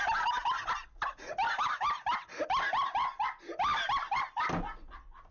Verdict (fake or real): real